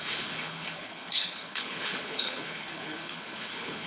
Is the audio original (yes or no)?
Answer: no